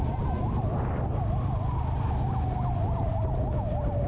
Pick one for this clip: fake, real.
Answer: real